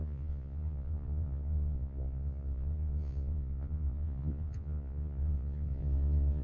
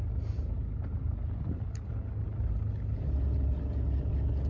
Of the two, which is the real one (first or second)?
second